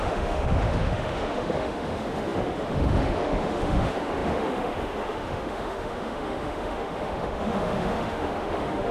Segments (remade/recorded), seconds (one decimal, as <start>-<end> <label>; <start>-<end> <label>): 0.0-8.9 remade